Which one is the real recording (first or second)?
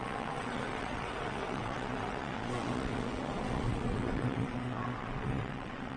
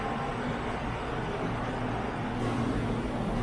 second